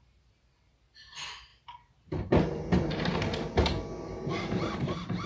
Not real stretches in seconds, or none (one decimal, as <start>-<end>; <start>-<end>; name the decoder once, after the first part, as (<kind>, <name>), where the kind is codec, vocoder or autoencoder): none